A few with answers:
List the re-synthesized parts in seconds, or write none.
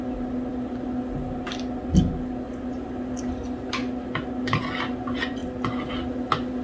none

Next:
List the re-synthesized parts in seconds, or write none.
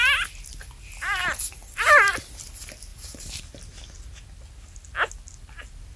1.6-2.3 (vocoder, BigVGAN v2); 2.9-3.6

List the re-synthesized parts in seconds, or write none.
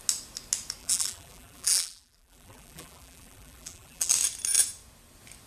0.8-4.1 (vocoder, BigVGAN v2)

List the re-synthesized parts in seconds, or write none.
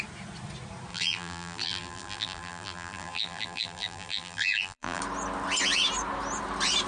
0.9-5.0 (vocoder, BigVGAN v2)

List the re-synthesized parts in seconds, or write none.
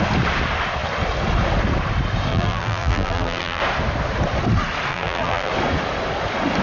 2.3-3.6 (vocoder, BigVGAN v2); 4.9-5.5